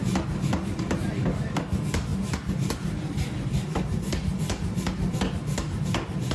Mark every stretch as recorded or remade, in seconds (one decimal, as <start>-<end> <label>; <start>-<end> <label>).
0.0-6.3 recorded